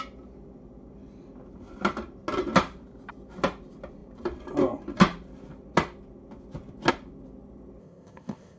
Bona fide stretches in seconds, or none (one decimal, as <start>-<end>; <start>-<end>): 0.0-7.8

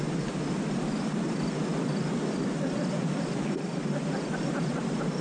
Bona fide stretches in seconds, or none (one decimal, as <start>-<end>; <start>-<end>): 0.0-1.7; 3.9-5.2

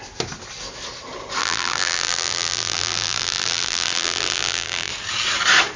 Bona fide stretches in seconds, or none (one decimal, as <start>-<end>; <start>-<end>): 0.0-1.4; 4.9-5.8

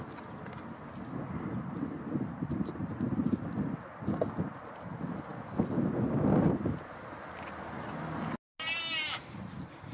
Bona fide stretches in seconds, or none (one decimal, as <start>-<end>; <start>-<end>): 0.0-9.9

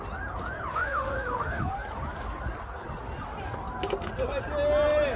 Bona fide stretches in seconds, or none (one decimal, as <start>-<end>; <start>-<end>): 0.0-0.7; 1.7-5.2

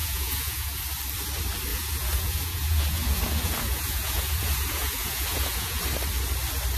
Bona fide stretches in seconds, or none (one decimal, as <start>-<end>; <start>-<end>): 0.8-1.7; 5.8-6.8